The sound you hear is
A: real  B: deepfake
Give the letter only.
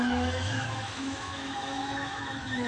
B